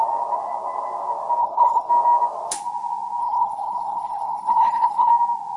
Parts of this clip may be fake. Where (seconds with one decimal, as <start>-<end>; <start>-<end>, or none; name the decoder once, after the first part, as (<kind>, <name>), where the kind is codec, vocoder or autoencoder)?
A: 1.4-1.9 (codec, HILCodec); 3.2-5.1